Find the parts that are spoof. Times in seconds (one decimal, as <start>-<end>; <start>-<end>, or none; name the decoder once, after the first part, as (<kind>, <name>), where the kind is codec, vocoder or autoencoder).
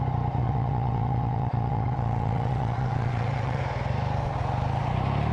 0.4-3.6 (vocoder, WaveNeXt)